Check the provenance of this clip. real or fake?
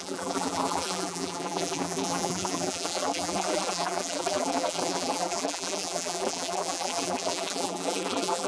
fake